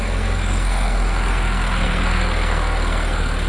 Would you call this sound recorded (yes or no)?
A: no